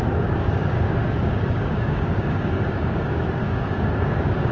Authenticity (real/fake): fake